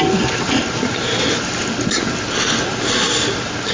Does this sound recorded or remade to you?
recorded